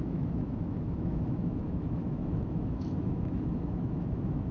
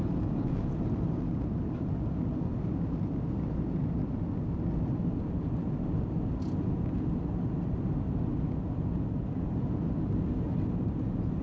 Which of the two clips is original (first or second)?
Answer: second